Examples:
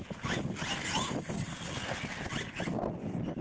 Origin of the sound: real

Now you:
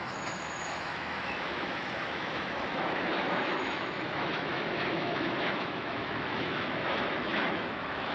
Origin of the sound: fake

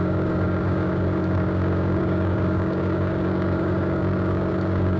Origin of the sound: fake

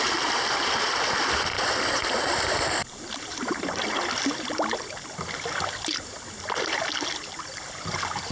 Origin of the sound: real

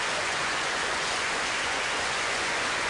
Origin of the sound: fake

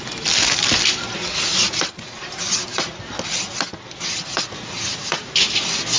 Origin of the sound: real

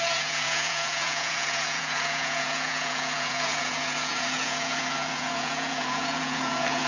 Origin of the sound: fake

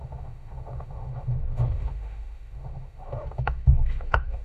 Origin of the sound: fake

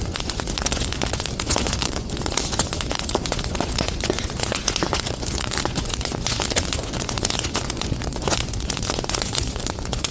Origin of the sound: fake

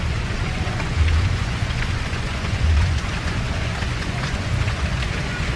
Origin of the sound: fake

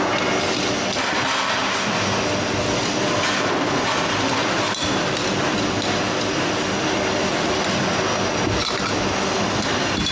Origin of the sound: real